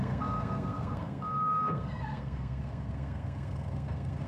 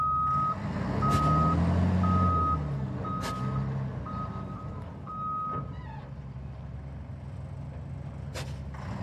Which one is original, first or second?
second